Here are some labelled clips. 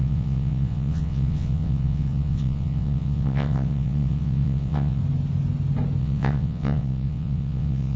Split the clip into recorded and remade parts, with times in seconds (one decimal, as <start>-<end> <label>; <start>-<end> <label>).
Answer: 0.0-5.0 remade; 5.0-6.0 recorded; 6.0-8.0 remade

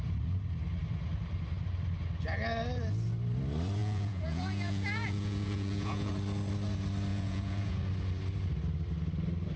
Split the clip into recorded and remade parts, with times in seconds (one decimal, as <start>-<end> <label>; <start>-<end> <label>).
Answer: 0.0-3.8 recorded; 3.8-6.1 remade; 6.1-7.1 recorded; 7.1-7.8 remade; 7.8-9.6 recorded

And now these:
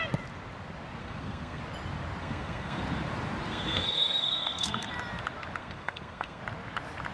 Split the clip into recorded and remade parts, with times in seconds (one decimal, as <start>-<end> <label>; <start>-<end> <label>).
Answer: 0.0-1.0 recorded; 1.0-1.6 remade; 1.6-2.2 recorded; 2.2-2.8 remade; 2.8-3.5 recorded; 3.5-4.9 remade; 4.9-5.6 recorded; 5.6-6.4 remade; 6.4-7.1 recorded

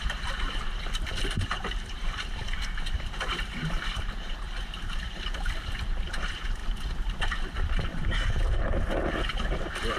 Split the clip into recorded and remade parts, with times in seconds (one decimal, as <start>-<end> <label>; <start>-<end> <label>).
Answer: 0.0-7.9 remade; 7.9-8.4 recorded; 8.4-10.0 remade

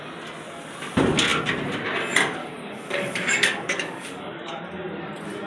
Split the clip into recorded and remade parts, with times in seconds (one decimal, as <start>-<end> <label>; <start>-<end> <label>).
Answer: 0.0-2.4 recorded; 2.4-4.6 remade; 4.6-5.5 recorded

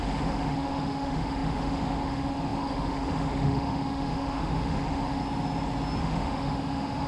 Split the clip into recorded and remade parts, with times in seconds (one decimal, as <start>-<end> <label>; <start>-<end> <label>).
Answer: 0.0-5.2 remade; 5.2-6.0 recorded; 6.0-7.1 remade

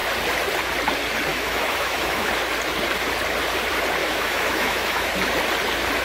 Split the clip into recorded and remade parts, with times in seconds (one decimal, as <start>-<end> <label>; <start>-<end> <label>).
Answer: 0.0-1.3 recorded; 1.3-2.3 remade; 2.3-4.0 recorded; 4.0-5.1 remade; 5.1-6.0 recorded

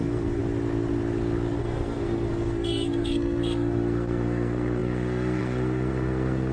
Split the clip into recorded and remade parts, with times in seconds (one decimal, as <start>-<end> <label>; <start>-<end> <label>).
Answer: 0.0-0.4 remade; 0.4-1.6 recorded; 1.6-6.5 remade